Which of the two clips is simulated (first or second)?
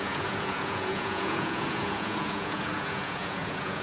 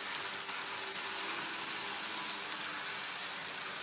first